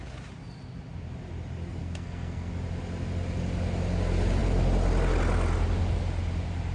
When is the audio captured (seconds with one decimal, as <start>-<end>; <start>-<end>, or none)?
0.0-1.8; 2.5-6.7